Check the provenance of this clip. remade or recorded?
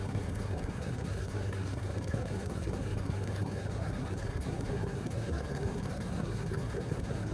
remade